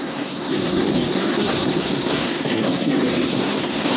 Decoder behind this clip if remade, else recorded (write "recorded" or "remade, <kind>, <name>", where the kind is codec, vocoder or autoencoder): remade, codec, SNAC